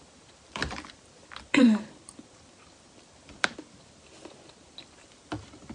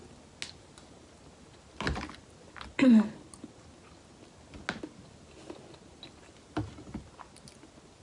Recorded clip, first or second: second